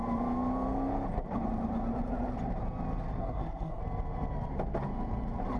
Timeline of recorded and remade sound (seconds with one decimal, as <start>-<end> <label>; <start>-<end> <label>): 0.0-3.2 recorded; 3.2-3.8 remade; 3.8-5.6 recorded